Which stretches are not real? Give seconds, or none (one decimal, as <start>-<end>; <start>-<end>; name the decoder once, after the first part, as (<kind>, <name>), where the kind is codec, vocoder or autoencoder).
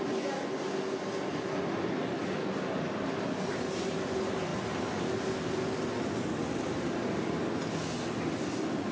none